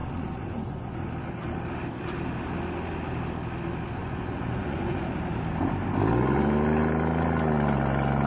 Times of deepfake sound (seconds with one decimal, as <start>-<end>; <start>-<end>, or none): 0.0-1.1; 4.0-5.0

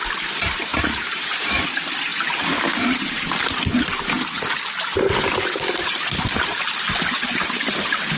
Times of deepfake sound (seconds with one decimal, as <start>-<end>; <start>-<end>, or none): 0.7-1.6

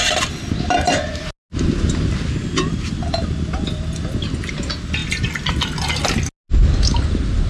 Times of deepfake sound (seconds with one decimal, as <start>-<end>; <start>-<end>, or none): none

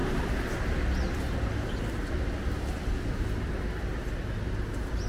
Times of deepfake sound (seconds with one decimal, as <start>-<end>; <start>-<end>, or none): none

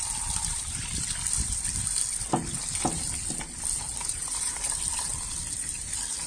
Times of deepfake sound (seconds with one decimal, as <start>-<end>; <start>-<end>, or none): 4.0-4.6

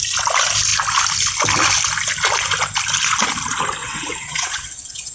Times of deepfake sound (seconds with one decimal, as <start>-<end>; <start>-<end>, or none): 3.8-5.1

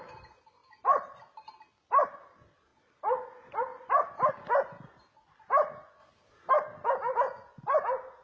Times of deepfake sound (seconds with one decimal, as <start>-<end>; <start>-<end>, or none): 0.6-1.5; 2.7-4.3; 6.0-6.5